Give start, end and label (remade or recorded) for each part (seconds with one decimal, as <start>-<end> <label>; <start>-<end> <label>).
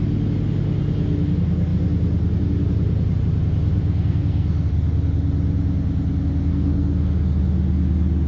0.0-3.8 recorded; 3.8-4.7 remade; 4.7-6.5 recorded; 6.5-7.4 remade; 7.4-8.3 recorded